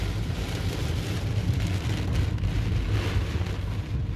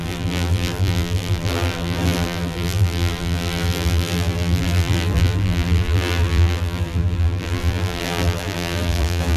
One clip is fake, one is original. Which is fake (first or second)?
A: second